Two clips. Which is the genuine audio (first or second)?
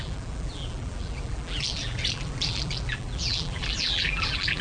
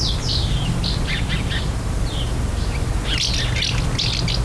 second